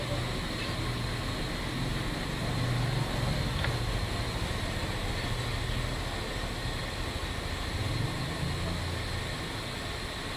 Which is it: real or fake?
real